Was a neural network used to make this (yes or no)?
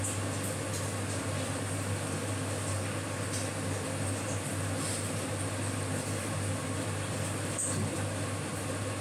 no